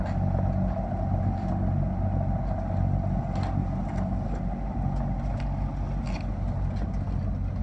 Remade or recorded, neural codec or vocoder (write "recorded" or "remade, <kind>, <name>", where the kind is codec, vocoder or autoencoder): recorded